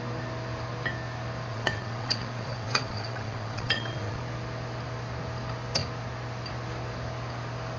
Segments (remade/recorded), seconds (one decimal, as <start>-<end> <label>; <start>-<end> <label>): 0.0-1.5 recorded; 1.5-4.2 remade; 4.2-7.8 recorded